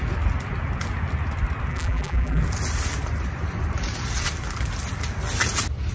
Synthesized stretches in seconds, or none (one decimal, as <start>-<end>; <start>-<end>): 1.7-2.4